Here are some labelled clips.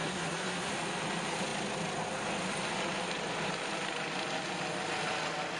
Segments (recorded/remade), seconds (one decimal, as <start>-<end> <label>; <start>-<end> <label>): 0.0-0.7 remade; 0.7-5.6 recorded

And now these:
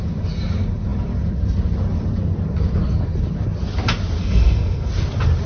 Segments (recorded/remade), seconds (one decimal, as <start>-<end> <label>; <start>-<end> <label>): 0.0-4.2 recorded; 4.2-4.9 remade; 4.9-5.5 recorded

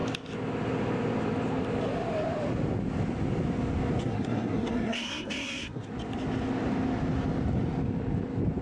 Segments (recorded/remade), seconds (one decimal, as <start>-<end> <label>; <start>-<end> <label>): 0.0-4.0 recorded; 4.0-5.9 remade; 5.9-8.6 recorded

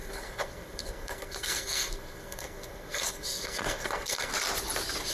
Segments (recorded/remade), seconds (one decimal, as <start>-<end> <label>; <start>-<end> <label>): 0.0-4.3 remade; 4.3-5.1 recorded

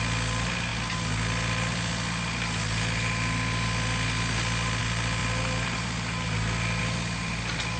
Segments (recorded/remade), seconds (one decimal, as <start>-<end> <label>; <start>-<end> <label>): 0.0-7.8 recorded